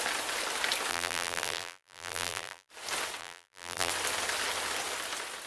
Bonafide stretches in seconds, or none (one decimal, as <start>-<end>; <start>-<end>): 0.0-0.9; 2.7-3.2; 3.9-5.5